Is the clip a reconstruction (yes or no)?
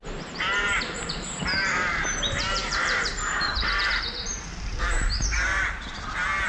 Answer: yes